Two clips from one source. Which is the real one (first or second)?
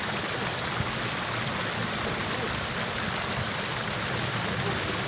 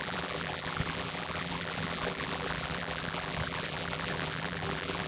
first